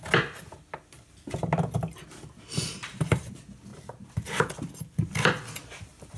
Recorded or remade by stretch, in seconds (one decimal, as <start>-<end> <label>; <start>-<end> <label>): 0.0-2.8 recorded; 2.8-3.3 remade; 3.3-6.2 recorded